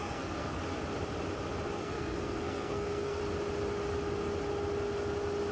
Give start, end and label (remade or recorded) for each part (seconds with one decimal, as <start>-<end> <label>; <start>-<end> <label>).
0.0-0.6 remade; 0.6-1.8 recorded; 1.8-3.2 remade; 3.2-5.5 recorded